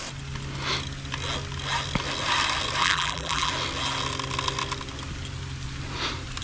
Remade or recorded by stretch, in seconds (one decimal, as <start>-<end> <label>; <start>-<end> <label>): 0.0-2.8 recorded; 2.8-3.5 remade; 3.5-6.4 recorded